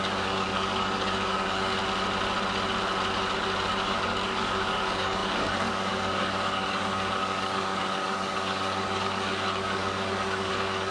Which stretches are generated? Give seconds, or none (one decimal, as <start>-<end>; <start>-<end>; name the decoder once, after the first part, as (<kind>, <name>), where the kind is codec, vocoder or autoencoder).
0.0-1.8 (codec, DAC); 3.7-10.9